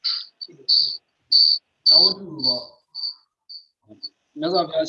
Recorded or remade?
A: recorded